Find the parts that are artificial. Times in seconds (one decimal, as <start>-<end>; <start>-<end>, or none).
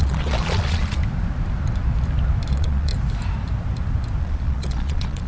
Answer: 0.0-1.0; 2.5-2.9; 4.2-5.3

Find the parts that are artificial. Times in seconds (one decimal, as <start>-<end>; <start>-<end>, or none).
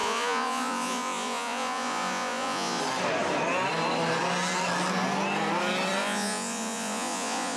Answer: 0.0-2.8; 6.0-7.6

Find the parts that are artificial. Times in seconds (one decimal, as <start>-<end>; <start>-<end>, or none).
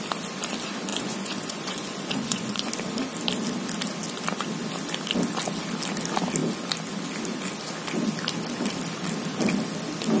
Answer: 0.9-2.7